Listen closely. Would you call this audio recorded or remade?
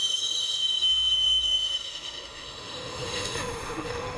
remade